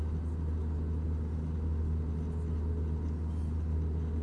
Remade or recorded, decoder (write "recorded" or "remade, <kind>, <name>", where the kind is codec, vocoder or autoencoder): recorded